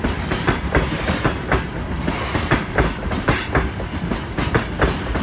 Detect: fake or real real